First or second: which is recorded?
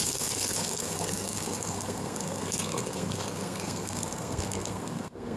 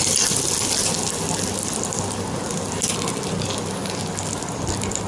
second